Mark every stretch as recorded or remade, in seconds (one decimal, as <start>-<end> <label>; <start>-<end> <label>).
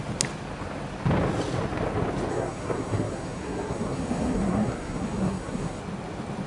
0.0-2.3 recorded; 2.3-5.8 remade; 5.8-6.5 recorded